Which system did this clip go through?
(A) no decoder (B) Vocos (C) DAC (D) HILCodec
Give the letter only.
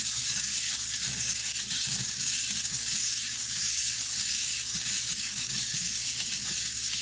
C